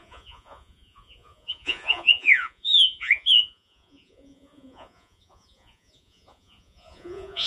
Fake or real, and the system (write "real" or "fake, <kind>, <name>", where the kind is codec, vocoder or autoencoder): fake, vocoder, Vocos